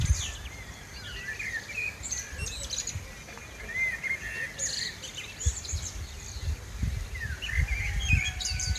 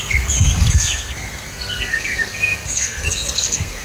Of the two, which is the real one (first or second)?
first